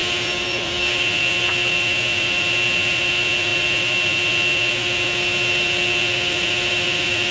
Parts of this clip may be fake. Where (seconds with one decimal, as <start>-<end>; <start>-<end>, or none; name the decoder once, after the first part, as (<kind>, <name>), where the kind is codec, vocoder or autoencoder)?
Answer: none